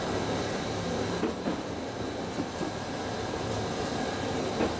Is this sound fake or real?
fake